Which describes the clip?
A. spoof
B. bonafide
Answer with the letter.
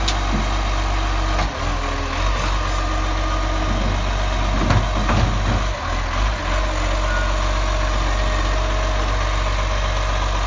B